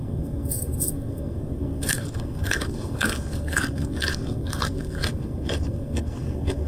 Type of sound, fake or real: fake